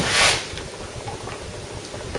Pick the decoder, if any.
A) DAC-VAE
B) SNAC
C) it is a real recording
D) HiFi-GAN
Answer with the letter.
C